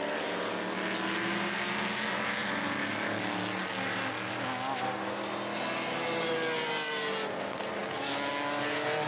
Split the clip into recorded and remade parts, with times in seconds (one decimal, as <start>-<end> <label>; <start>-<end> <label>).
0.0-9.1 recorded